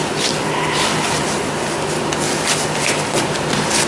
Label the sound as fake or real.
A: real